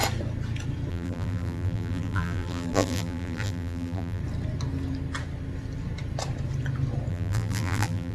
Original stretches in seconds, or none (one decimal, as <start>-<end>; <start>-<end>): 0.0-0.9; 4.2-7.1